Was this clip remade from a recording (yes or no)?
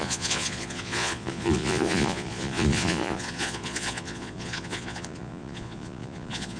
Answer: yes